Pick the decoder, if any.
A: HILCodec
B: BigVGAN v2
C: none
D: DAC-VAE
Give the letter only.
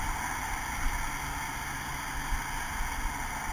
C